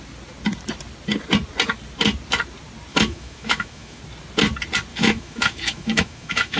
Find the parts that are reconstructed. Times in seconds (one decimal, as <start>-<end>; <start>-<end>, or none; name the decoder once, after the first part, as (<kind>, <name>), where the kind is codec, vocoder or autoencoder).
2.9-4.0 (autoencoder, DAC-VAE); 4.9-6.6